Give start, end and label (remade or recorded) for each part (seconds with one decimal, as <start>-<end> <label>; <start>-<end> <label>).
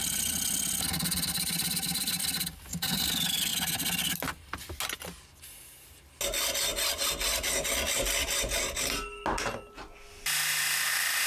0.0-11.3 recorded